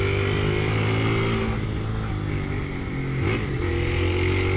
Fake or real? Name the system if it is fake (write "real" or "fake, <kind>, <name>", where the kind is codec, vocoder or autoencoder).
real